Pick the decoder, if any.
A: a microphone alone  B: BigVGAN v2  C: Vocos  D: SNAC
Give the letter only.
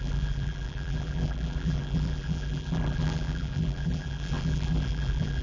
B